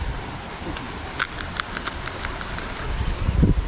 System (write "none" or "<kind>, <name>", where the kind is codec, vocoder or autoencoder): none